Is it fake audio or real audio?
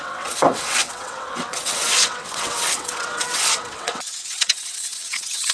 fake